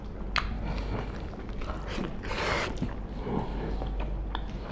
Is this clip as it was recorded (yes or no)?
yes